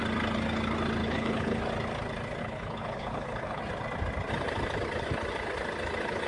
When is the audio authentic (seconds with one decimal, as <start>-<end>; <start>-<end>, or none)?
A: 0.0-1.0; 1.6-2.4; 3.6-6.3